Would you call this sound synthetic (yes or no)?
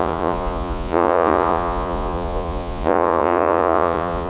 yes